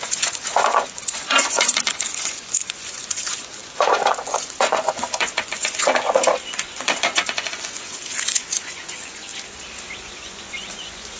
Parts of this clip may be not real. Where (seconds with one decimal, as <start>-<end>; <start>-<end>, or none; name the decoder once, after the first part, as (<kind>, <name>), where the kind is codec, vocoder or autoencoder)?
0.0-9.3 (vocoder, Vocos); 10.0-11.2